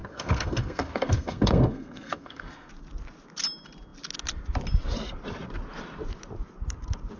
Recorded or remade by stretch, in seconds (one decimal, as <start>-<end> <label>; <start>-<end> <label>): 0.0-2.7 remade; 2.7-7.2 recorded